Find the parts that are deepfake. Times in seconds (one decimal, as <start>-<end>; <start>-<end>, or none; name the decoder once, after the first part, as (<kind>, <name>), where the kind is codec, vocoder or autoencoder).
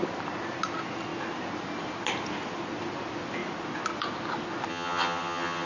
4.7-5.7 (vocoder, HiFi-GAN)